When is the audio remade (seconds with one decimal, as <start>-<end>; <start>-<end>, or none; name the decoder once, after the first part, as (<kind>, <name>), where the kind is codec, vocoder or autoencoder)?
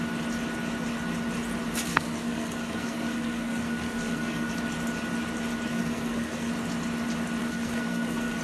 1.9-4.5 (codec, SNAC); 5.7-6.5; 7.4-8.4